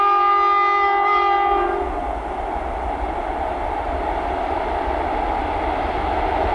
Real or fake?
real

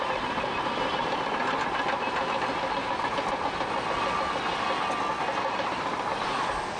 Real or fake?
real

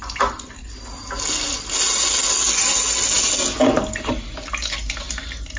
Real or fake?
real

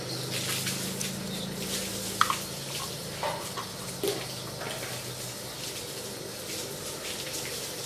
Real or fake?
real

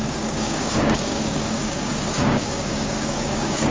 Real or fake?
fake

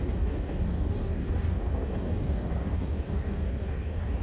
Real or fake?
fake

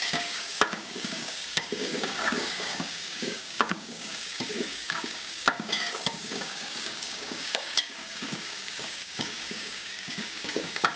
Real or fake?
fake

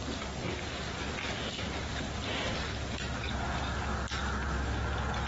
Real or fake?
real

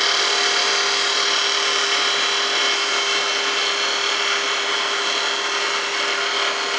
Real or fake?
real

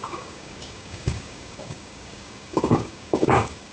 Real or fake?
fake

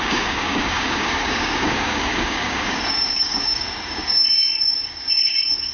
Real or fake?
fake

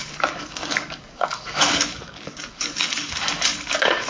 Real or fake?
fake